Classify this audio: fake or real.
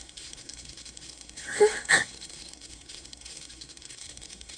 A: fake